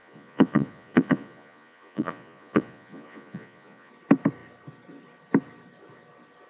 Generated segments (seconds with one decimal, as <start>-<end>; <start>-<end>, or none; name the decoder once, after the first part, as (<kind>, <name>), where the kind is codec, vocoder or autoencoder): 0.0-3.9 (vocoder, Vocos)